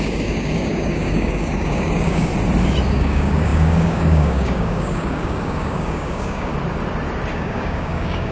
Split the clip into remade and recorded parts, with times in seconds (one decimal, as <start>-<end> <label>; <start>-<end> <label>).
0.0-2.3 remade; 2.3-2.9 recorded; 2.9-6.5 remade; 6.5-7.3 recorded; 7.3-8.3 remade